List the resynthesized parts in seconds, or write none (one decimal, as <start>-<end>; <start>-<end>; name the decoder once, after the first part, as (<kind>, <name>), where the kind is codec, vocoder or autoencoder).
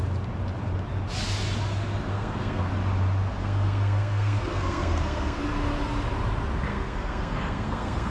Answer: 2.1-2.7 (codec, SNAC); 3.4-5.4; 6.7-8.1